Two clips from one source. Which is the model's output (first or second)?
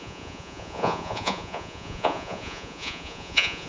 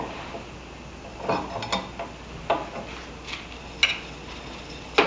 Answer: first